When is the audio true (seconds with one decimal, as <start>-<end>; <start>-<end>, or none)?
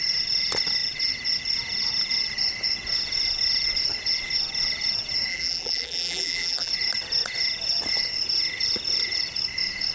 0.0-5.3; 6.7-9.9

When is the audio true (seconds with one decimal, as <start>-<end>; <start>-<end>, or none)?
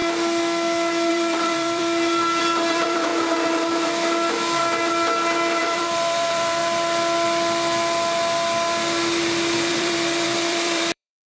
0.0-1.1; 1.8-2.4; 3.1-5.6; 6.6-9.7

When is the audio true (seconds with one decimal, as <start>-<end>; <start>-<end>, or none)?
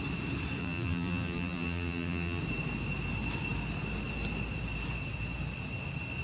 0.0-0.6; 2.4-6.2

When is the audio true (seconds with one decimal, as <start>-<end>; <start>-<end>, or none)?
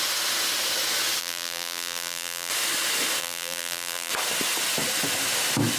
0.0-1.2; 2.5-3.2; 4.1-5.8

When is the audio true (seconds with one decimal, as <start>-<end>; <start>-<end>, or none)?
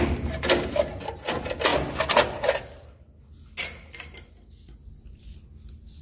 0.0-6.0